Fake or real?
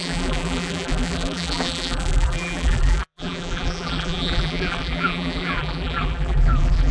fake